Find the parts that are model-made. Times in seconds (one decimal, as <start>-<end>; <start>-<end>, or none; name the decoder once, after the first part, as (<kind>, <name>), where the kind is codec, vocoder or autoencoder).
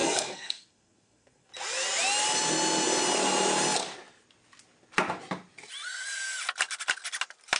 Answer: 0.0-1.5 (codec, SNAC)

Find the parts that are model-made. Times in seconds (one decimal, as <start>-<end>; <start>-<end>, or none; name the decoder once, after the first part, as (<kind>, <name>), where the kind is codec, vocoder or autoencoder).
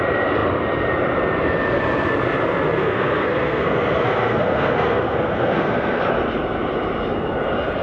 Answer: 2.8-6.0 (codec, SNAC)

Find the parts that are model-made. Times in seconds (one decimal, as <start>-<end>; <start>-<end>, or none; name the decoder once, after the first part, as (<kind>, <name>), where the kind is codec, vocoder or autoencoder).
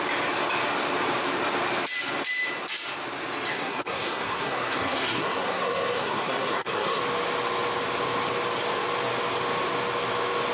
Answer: 3.5-7.0 (codec, SNAC)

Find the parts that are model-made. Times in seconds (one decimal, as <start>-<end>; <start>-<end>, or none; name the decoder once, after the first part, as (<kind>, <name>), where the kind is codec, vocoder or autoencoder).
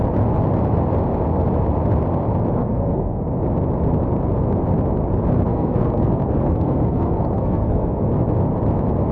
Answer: 2.6-3.2 (codec, SNAC); 5.5-8.1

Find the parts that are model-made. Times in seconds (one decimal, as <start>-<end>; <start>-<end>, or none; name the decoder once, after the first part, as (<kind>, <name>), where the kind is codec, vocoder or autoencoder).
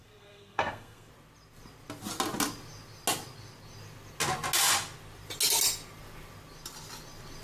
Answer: 0.0-1.1 (codec, SNAC)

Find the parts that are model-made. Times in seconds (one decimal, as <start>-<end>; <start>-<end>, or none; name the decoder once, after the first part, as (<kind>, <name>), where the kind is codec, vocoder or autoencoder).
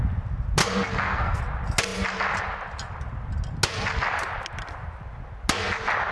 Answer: 0.6-1.4 (codec, SNAC)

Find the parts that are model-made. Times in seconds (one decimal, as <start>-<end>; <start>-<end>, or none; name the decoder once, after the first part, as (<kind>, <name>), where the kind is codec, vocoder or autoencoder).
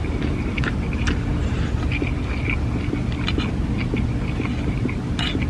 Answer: none